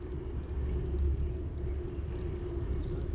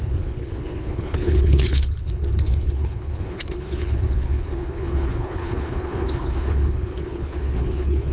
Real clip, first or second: first